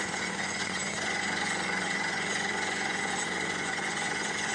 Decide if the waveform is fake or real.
fake